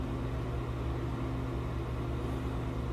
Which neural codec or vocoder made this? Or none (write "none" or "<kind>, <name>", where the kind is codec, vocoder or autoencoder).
none